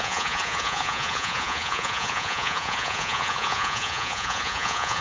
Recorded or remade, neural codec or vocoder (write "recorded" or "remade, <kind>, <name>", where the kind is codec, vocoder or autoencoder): remade, vocoder, Vocos